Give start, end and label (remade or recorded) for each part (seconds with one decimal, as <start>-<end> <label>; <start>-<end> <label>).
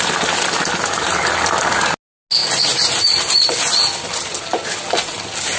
0.0-5.6 recorded